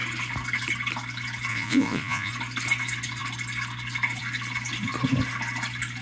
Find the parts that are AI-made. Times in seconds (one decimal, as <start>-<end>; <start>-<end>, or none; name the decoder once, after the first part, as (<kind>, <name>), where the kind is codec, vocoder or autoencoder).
1.5-2.3 (vocoder, Vocos)